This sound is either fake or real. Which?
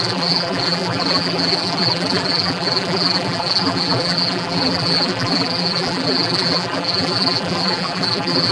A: fake